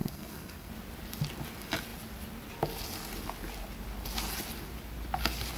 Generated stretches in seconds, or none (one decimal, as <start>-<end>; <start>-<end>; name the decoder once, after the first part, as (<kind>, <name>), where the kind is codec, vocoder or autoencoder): 0.0-0.7 (codec, SNAC)